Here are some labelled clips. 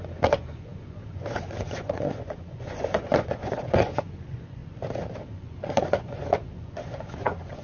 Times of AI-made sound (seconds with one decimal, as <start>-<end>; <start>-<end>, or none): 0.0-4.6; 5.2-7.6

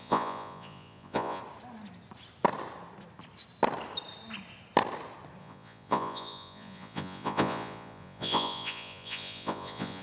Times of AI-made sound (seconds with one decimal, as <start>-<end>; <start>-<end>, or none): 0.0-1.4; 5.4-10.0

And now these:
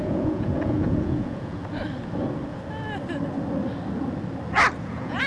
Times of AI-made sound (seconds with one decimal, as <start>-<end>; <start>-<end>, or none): 0.0-1.6; 4.8-5.3